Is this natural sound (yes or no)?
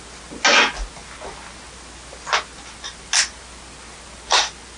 yes